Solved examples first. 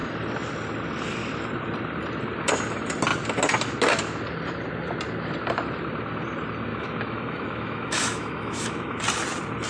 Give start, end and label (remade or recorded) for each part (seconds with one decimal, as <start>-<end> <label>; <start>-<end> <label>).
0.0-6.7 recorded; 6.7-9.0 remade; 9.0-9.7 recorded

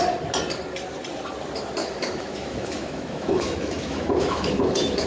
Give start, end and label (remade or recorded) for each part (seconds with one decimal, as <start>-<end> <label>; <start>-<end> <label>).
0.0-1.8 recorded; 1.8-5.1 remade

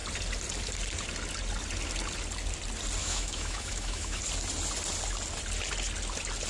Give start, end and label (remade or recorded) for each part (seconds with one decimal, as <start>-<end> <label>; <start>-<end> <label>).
0.0-3.0 recorded; 3.0-4.2 remade; 4.2-6.5 recorded